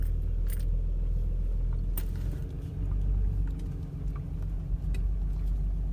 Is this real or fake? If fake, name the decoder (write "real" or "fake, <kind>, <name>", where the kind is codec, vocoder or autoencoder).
real